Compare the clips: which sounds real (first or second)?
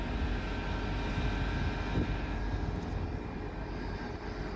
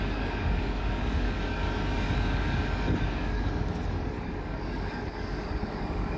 first